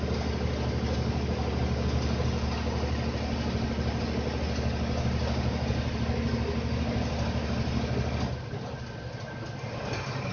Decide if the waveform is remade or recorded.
recorded